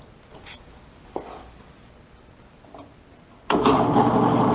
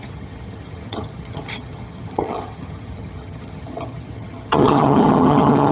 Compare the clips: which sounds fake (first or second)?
second